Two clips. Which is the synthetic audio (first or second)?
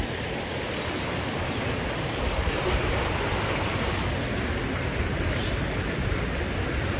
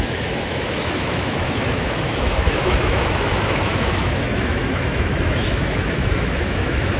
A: second